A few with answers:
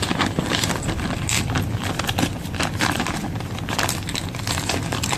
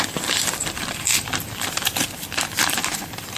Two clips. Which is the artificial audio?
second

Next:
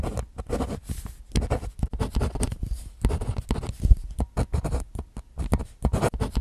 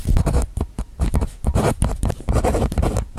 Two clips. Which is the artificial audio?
second